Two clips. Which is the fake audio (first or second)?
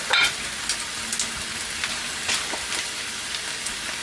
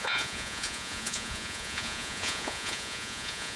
second